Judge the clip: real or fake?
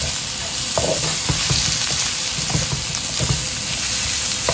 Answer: real